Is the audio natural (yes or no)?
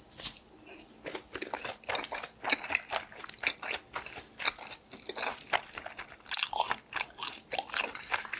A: yes